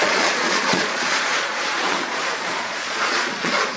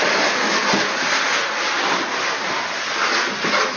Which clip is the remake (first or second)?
first